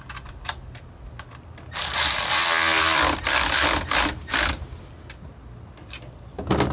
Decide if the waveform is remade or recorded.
recorded